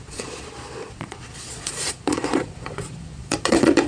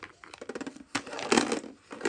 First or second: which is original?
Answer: second